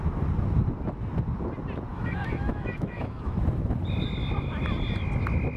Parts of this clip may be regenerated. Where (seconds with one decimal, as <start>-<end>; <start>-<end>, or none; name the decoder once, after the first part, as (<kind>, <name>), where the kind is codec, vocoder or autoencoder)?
1.9-3.4 (autoencoder, DAC-VAE)